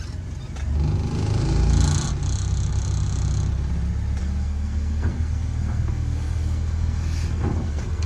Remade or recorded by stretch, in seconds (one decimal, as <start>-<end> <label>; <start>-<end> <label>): 0.0-4.2 recorded; 4.2-8.1 remade